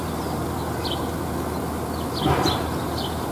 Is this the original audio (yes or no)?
yes